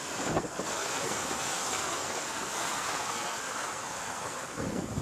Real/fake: fake